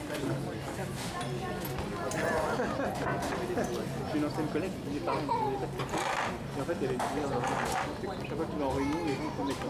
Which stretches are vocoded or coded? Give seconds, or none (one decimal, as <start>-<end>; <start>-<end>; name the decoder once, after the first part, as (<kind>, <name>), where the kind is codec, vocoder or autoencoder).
none